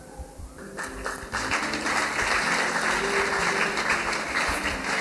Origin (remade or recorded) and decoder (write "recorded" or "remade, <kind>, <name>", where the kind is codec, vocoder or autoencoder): recorded